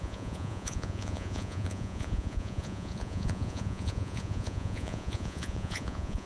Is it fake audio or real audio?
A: fake